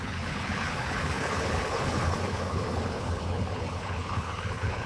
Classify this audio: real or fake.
fake